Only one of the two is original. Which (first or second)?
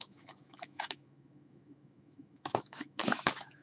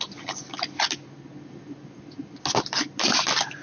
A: second